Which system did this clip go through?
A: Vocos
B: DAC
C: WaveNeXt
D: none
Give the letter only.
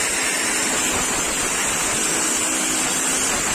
D